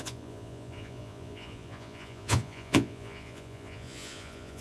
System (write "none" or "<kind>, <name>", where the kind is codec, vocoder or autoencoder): vocoder, Vocos